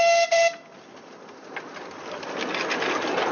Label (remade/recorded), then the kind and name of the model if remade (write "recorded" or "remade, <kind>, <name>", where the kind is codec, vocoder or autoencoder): recorded